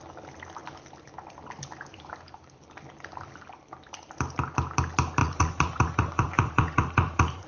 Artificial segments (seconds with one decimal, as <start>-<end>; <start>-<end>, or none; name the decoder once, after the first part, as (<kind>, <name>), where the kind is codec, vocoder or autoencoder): 5.2-7.5 (vocoder, Vocos)